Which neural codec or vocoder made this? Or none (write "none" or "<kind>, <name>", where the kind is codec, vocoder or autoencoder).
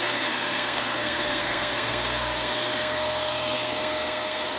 codec, SNAC